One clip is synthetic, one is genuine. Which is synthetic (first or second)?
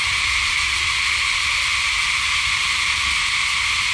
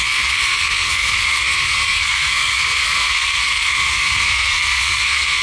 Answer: second